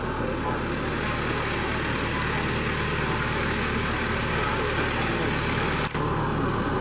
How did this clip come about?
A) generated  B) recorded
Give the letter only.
B